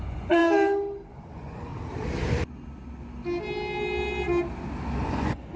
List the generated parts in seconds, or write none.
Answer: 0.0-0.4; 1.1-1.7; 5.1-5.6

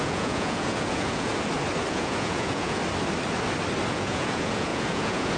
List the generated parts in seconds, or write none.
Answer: 0.0-1.3; 1.9-2.8; 3.9-5.4

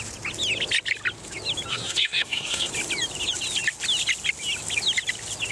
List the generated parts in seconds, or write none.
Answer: 1.7-2.7

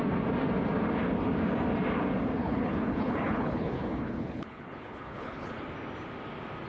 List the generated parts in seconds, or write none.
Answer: 2.4-5.6

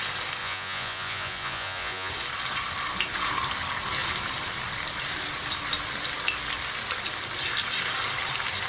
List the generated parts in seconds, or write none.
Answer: 0.4-2.1